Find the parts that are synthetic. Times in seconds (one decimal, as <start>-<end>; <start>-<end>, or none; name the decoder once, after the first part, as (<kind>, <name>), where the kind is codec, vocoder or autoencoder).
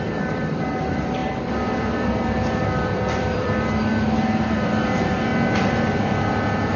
0.0-5.3 (vocoder, BigVGAN v2)